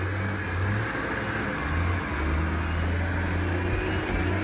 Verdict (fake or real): real